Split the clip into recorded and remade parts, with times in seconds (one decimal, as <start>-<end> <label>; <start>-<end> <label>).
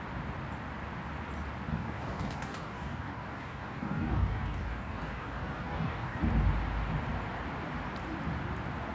0.0-1.7 recorded; 1.7-6.2 remade; 6.2-8.9 recorded